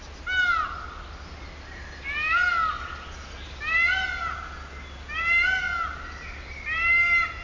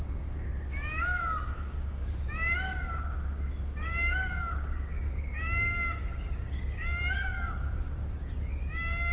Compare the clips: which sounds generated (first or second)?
second